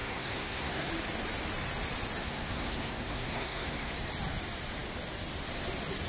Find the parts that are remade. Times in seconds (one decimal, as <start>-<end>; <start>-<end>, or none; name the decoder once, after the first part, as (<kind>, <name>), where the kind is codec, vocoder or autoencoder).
0.0-0.9 (codec, SNAC); 2.2-4.1